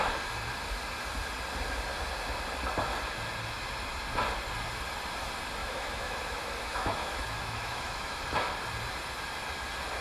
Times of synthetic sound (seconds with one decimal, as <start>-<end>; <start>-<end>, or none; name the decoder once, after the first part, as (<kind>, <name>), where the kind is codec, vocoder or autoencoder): 5.6-8.2 (autoencoder, DAC-VAE)